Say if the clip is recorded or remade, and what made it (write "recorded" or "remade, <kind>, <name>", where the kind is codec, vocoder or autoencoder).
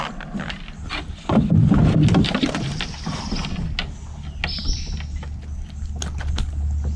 recorded